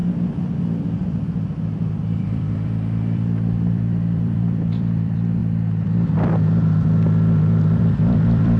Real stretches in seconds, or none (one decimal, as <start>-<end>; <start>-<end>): 0.0-1.8; 5.4-7.8

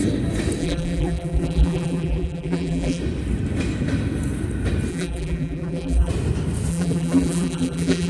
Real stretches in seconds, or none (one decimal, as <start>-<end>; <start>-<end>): 0.0-0.6; 3.0-4.9; 6.1-6.7

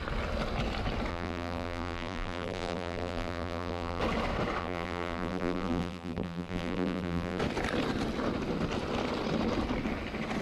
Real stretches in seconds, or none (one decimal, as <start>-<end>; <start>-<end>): 0.0-1.1; 4.0-4.6; 7.4-10.4

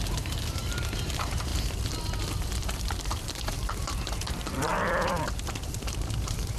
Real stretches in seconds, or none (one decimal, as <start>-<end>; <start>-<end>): 1.5-2.5; 4.7-5.6

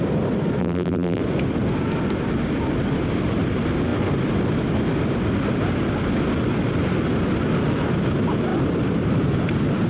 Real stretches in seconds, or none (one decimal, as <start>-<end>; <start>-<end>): 0.0-0.6; 1.2-9.9